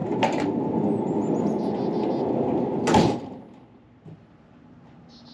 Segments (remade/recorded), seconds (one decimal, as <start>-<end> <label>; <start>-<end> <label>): 0.0-5.3 recorded